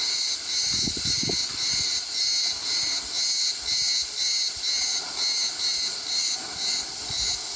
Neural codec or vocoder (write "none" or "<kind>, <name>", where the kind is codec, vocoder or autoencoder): none